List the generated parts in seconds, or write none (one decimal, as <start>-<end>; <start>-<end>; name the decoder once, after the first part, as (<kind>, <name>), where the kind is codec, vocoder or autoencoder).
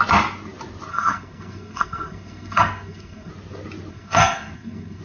0.9-3.3 (codec, SNAC); 3.9-5.0